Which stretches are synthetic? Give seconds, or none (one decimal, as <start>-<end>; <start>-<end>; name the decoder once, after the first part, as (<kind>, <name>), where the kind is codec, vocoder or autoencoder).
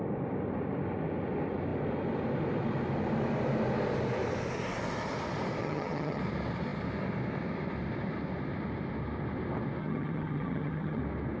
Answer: 5.6-6.2 (vocoder, HiFi-GAN); 9.8-11.0